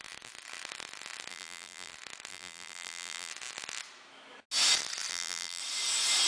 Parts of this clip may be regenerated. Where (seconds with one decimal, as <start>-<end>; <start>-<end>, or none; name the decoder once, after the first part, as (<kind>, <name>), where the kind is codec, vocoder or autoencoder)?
1.3-1.9 (vocoder, BigVGAN v2); 2.3-3.3; 5.1-5.6